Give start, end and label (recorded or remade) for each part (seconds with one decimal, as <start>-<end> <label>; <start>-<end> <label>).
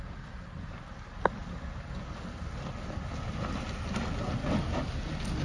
0.0-5.4 recorded